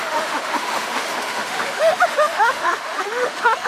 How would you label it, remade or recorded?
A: remade